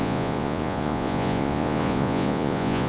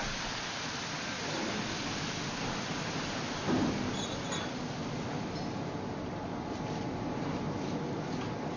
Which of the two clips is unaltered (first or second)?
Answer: second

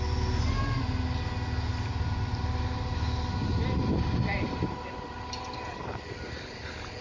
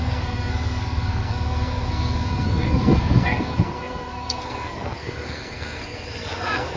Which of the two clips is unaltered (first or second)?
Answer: first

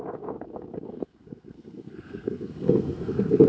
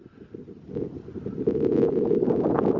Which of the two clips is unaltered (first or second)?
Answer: second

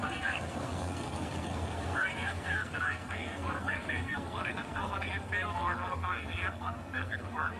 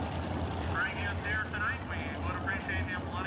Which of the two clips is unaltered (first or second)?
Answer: second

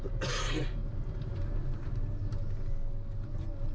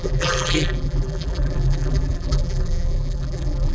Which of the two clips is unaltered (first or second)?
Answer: first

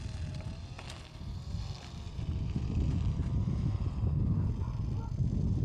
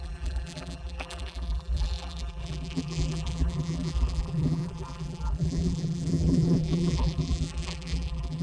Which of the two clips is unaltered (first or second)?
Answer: first